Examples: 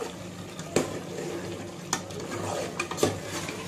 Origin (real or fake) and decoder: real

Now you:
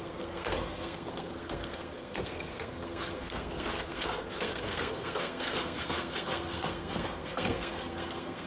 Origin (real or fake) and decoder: fake, codec, SNAC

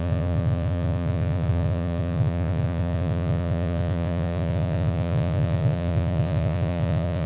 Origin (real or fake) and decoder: fake, vocoder, Vocos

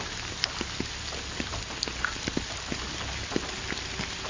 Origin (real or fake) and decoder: real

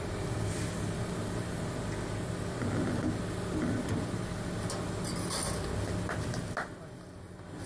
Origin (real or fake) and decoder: real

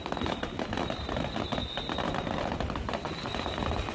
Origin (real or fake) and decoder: real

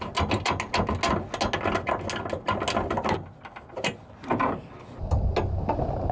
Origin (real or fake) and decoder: real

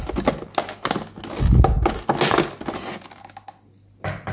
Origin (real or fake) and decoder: real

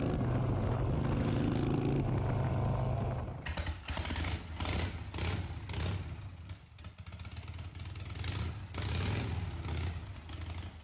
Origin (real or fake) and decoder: real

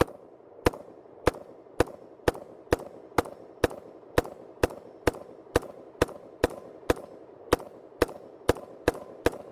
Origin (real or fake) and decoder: fake, vocoder, BigVGAN v2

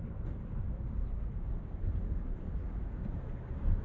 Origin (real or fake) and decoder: real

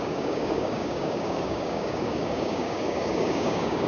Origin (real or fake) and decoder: fake, codec, DAC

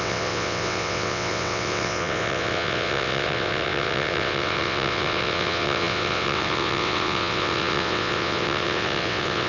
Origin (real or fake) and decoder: fake, vocoder, WaveNeXt